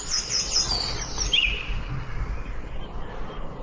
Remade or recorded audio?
recorded